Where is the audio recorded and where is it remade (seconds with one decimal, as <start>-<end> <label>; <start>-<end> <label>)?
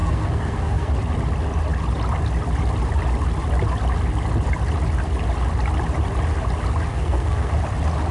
0.0-0.9 remade; 0.9-6.9 recorded; 6.9-7.5 remade; 7.5-8.1 recorded